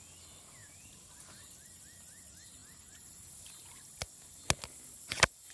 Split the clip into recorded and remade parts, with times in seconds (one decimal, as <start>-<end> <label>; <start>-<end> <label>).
0.0-5.5 recorded

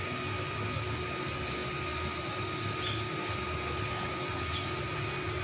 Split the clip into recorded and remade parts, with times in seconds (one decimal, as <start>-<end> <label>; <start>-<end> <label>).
0.0-5.4 recorded

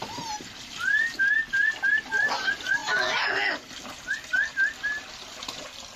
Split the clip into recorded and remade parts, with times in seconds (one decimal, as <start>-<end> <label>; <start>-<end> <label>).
0.0-6.0 recorded

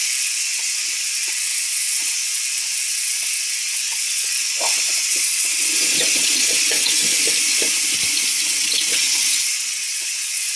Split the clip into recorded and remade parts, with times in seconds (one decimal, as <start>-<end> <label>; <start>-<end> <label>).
0.0-7.0 remade; 7.0-8.4 recorded; 8.4-10.6 remade

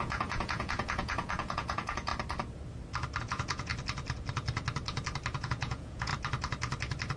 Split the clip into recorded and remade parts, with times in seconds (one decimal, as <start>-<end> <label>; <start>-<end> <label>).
0.0-2.1 remade; 2.1-3.2 recorded; 3.2-3.7 remade; 3.7-5.4 recorded; 5.4-6.1 remade; 6.1-7.2 recorded

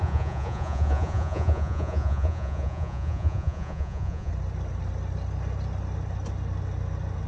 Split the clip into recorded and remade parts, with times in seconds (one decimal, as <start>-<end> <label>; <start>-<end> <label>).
0.0-4.3 remade; 4.3-7.3 recorded

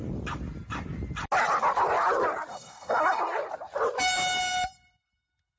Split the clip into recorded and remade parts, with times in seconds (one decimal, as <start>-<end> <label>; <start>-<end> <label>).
0.0-2.5 recorded; 2.5-3.2 remade; 3.2-5.6 recorded

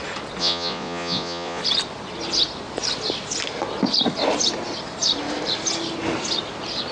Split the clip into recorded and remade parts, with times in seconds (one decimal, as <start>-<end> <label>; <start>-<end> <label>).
0.0-0.4 recorded; 0.4-1.6 remade; 1.6-6.9 recorded